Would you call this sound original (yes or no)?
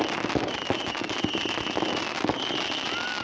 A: yes